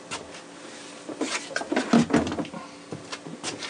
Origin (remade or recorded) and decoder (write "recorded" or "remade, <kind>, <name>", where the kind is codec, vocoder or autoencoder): recorded